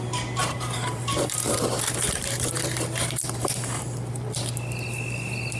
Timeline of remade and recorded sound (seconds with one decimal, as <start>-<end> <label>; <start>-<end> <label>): 0.0-0.4 recorded; 0.4-3.8 remade; 3.8-5.6 recorded